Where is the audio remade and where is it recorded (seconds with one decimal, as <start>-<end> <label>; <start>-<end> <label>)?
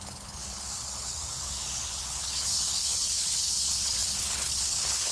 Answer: 0.0-5.1 remade